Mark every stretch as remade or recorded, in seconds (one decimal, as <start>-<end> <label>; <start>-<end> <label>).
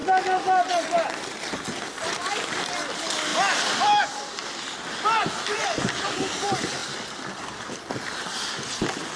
0.0-3.3 recorded; 3.3-4.0 remade; 4.0-6.8 recorded; 6.8-7.8 remade; 7.8-9.2 recorded